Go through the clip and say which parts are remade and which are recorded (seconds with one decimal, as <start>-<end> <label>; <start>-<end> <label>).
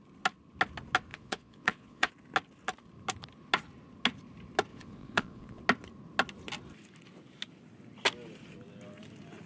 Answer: 0.0-1.1 recorded; 1.1-2.1 remade; 2.1-4.7 recorded; 4.7-5.6 remade; 5.6-9.5 recorded